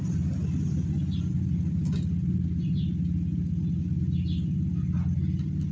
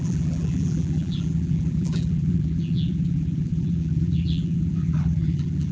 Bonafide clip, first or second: first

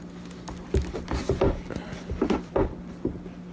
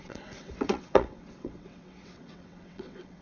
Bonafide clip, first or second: first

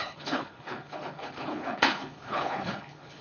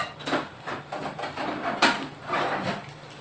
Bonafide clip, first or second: second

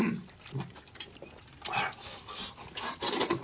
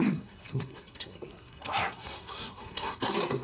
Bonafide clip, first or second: first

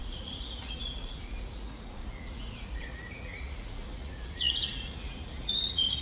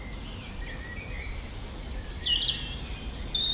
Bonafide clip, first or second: second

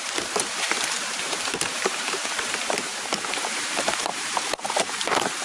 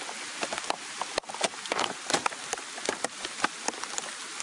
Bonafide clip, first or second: second